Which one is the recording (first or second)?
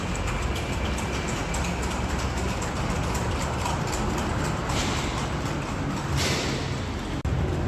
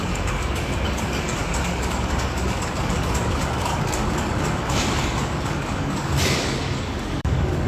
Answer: first